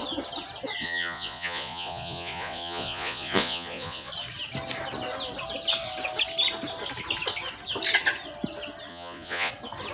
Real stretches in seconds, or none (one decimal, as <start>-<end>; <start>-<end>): 0.0-0.8; 4.1-8.9; 9.5-9.9